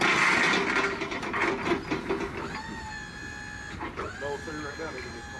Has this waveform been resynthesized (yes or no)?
no